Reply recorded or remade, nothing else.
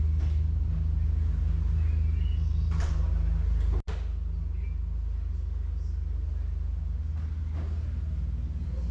recorded